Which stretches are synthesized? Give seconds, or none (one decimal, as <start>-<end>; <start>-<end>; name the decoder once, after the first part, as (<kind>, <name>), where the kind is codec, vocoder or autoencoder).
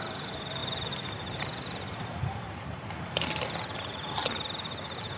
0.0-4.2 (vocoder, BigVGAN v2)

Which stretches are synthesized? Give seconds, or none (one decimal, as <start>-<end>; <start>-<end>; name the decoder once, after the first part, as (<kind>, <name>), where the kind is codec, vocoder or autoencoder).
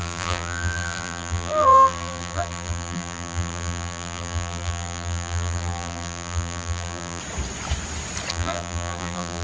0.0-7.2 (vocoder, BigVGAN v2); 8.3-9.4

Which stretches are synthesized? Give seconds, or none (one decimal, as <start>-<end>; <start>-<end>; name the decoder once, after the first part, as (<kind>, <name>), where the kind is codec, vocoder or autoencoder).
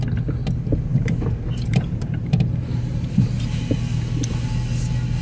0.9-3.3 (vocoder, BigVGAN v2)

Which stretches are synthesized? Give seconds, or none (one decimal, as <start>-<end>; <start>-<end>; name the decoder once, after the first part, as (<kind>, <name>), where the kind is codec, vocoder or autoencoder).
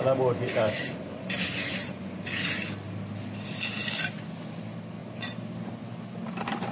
5.0-5.7 (vocoder, BigVGAN v2)